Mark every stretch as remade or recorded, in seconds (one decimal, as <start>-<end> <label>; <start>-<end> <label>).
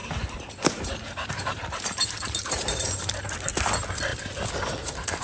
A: 0.0-3.1 remade; 3.1-4.1 recorded; 4.1-5.2 remade